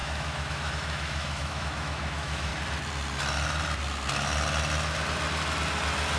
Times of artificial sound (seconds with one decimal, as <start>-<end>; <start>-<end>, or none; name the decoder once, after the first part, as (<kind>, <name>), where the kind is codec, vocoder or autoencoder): 0.0-2.5 (autoencoder, DAC-VAE)

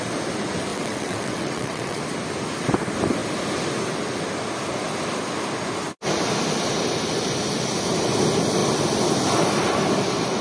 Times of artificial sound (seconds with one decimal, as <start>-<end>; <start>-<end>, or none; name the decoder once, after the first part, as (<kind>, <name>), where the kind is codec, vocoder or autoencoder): 0.7-2.0 (vocoder, WaveNeXt)

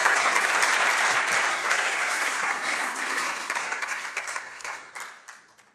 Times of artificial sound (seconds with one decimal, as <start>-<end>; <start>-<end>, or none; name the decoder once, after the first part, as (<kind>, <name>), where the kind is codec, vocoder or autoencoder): 0.0-0.5 (codec, SNAC); 1.5-4.9

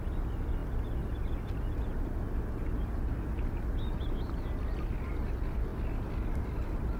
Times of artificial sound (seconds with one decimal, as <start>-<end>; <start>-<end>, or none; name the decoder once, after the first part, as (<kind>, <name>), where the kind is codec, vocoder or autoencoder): none

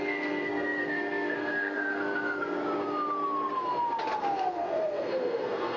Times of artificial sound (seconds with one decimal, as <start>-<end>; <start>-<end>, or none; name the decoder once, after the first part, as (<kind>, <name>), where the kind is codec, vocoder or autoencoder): 0.0-2.6 (codec, SNAC); 4.2-5.8

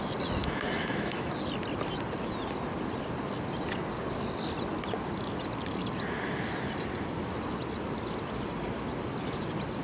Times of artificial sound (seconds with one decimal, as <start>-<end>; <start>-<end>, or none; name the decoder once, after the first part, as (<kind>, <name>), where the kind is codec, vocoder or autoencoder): 0.4-1.3 (autoencoder, DAC-VAE)

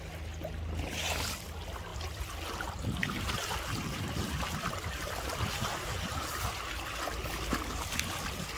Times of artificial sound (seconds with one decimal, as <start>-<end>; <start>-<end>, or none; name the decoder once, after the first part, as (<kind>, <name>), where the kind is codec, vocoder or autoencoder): none